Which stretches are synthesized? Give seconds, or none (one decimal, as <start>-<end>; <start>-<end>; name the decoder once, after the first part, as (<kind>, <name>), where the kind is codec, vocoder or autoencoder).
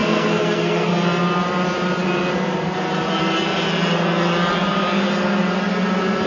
0.0-0.9 (codec, SNAC)